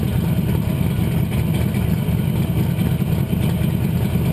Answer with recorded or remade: recorded